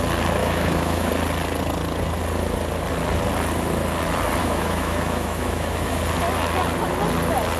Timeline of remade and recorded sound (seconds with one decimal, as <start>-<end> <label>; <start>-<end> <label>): 0.0-0.4 recorded; 0.4-1.1 remade; 1.1-4.4 recorded; 4.4-6.0 remade; 6.0-7.6 recorded